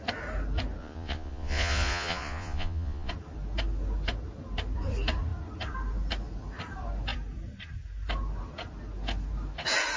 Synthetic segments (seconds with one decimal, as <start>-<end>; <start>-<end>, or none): 0.8-3.1